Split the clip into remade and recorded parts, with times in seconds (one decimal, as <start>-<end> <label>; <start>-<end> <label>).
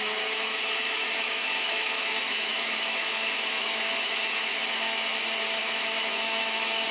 0.0-5.1 remade; 5.1-5.6 recorded; 5.6-6.9 remade